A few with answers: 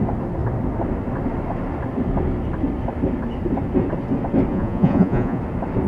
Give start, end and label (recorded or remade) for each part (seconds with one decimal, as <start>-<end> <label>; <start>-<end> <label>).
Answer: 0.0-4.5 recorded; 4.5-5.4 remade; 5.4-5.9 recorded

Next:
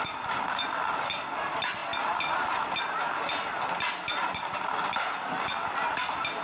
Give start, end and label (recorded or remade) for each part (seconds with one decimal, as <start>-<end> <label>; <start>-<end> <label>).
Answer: 0.0-6.4 recorded

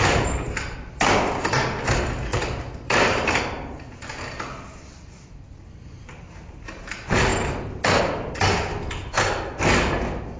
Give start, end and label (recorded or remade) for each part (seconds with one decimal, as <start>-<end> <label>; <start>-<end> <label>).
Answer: 0.0-2.3 recorded; 2.3-3.4 remade; 3.4-10.4 recorded

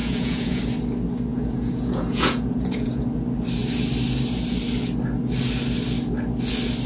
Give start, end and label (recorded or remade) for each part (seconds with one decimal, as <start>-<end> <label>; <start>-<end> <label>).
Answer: 0.0-0.6 remade; 0.6-1.3 recorded; 1.3-3.0 remade; 3.0-6.9 recorded

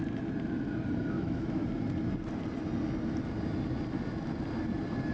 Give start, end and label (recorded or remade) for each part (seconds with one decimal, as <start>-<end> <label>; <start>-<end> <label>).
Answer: 0.0-1.0 recorded; 1.0-1.6 remade; 1.6-5.1 recorded

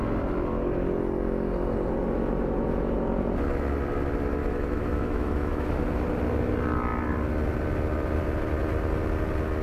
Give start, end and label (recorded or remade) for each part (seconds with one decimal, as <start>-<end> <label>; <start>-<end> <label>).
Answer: 0.0-4.4 recorded; 4.4-5.8 remade; 5.8-9.6 recorded

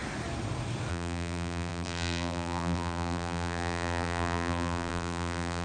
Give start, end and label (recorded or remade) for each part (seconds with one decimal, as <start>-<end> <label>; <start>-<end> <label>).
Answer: 0.0-0.9 recorded; 0.9-5.6 remade

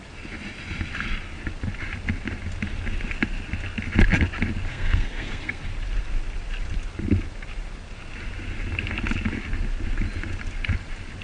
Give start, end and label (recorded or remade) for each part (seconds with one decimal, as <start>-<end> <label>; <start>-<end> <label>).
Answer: 0.0-4.7 recorded; 4.7-5.6 remade; 5.6-11.2 recorded